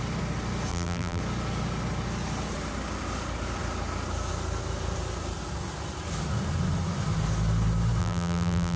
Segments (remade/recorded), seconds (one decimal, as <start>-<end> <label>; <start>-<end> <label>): 0.0-0.7 recorded; 0.7-1.2 remade; 1.2-8.0 recorded; 8.0-8.8 remade